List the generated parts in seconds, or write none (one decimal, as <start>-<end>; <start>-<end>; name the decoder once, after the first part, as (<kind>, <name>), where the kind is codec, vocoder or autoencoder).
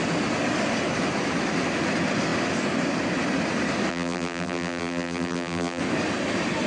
3.9-5.8 (vocoder, BigVGAN v2)